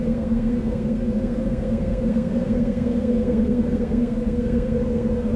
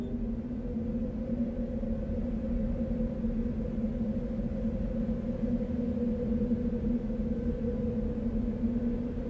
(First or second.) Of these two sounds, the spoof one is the first